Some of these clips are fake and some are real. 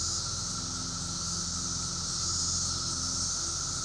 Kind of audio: real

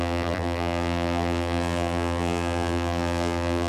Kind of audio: fake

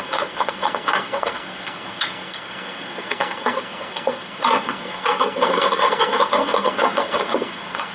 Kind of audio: fake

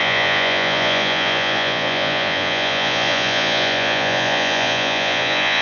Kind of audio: fake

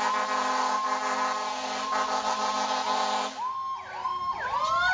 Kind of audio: real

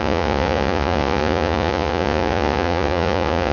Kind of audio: fake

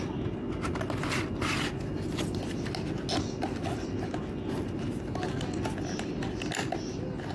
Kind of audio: real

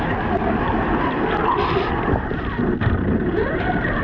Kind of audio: real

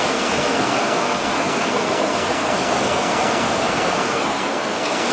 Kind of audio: fake